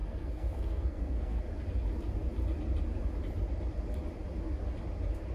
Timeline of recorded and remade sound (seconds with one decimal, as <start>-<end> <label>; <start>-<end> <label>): 0.0-1.4 remade; 1.4-5.3 recorded